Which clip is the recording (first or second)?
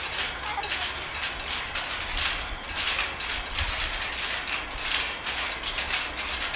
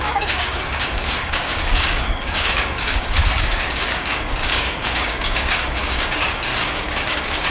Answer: first